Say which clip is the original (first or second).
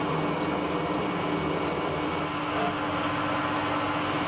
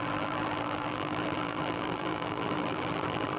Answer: first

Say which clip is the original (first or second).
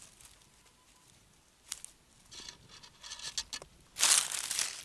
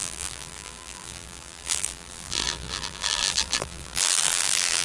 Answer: first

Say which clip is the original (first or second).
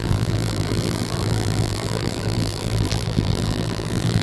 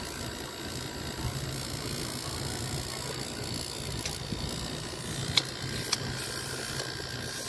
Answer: second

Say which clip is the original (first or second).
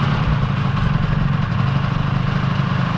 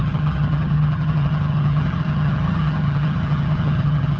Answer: first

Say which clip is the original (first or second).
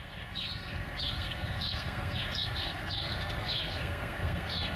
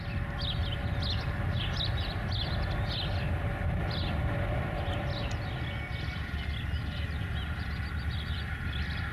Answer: second